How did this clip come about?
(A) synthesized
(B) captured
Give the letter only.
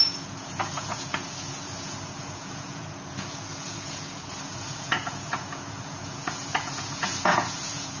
A